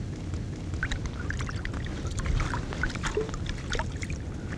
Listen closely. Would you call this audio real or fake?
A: real